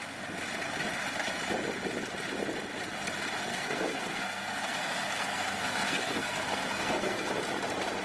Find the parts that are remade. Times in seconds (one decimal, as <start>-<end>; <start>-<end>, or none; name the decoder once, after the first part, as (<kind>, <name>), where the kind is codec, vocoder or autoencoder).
3.5-7.3 (codec, SNAC)

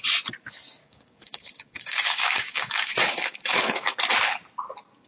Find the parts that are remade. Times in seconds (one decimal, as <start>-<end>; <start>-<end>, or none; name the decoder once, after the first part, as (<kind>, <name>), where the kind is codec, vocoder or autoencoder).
0.8-3.9 (codec, DAC)

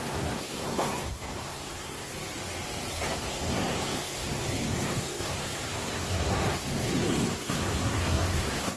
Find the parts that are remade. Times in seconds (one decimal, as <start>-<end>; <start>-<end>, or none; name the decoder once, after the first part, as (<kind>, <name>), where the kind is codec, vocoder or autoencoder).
0.0-2.1 (codec, SNAC); 2.9-8.8

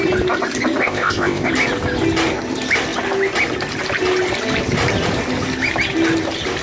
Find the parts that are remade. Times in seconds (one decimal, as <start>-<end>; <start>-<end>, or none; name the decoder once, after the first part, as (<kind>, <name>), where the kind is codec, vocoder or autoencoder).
0.8-1.5 (codec, ZipCodec)

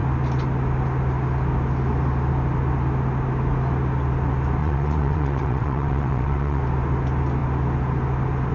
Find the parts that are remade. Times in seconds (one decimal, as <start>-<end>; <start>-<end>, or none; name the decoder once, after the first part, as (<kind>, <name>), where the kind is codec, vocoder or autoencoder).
4.6-6.6 (vocoder, WaveNeXt)

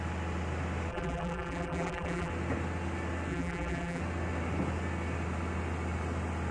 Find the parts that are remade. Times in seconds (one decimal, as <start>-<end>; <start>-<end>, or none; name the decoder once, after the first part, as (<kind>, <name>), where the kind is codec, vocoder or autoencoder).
0.9-2.3 (vocoder, BigVGAN v2); 3.3-4.0

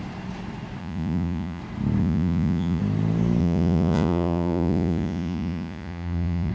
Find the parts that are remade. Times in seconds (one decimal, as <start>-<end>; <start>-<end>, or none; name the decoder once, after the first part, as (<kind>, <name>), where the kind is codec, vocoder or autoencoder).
0.8-1.6 (vocoder, Vocos); 2.0-2.8; 3.4-6.5

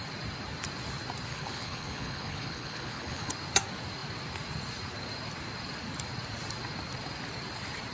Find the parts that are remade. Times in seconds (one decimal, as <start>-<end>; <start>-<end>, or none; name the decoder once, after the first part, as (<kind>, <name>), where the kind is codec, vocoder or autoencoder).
1.3-3.3 (codec, HILCodec)